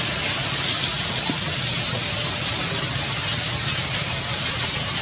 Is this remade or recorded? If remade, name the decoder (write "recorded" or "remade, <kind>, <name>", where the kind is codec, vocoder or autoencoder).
recorded